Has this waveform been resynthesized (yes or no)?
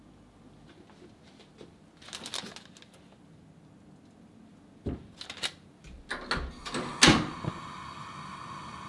no